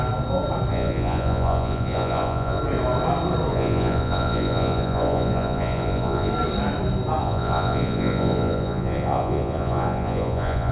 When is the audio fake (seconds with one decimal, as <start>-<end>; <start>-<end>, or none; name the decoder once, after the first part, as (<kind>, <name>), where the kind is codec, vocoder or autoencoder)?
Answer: 0.7-2.6 (vocoder, Vocos); 3.5-6.3; 7.2-10.7